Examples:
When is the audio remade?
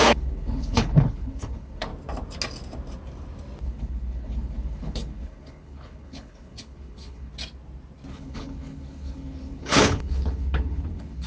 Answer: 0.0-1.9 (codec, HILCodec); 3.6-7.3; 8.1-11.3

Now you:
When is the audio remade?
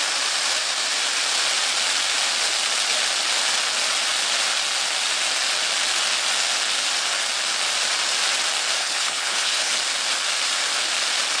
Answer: 8.8-9.7 (codec, HILCodec)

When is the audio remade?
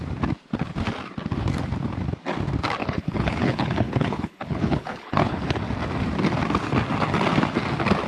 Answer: 2.8-5.6 (codec, HILCodec)